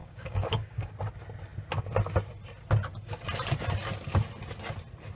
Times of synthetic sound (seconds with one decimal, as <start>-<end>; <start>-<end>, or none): 0.0-0.9